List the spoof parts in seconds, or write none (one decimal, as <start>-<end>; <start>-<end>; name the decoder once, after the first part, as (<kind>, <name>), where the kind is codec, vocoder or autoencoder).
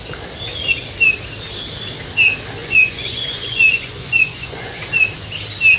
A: 2.6-4.8 (vocoder, Vocos)